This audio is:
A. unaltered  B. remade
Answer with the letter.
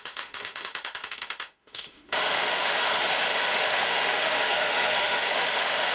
B